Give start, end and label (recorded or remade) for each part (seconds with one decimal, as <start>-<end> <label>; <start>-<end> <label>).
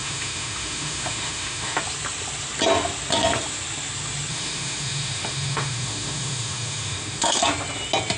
0.0-1.8 remade; 1.8-4.3 recorded; 4.3-7.4 remade; 7.4-8.2 recorded